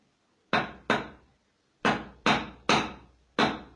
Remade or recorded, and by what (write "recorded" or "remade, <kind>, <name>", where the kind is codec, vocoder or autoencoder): recorded